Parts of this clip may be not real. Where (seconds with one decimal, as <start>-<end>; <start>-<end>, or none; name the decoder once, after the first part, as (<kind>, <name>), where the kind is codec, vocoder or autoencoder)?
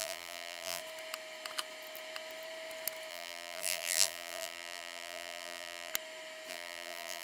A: 0.0-0.8 (vocoder, BigVGAN v2); 3.1-5.9; 6.5-7.2